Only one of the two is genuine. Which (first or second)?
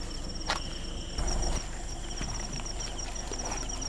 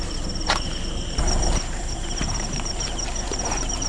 first